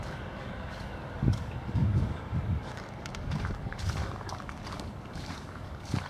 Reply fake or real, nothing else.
fake